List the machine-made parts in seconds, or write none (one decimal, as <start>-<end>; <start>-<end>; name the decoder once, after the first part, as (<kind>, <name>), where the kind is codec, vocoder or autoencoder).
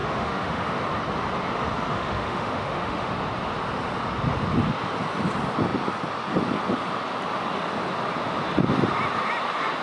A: 0.0-0.8 (autoencoder, DAC-VAE); 1.9-3.1